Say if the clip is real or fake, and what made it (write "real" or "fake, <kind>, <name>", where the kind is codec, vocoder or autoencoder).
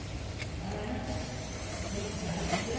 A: real